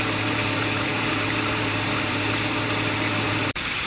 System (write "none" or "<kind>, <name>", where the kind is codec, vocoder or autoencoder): vocoder, BigVGAN v2